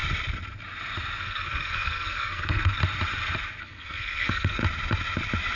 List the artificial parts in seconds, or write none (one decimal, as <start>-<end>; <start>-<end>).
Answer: 1.2-2.8; 3.6-4.6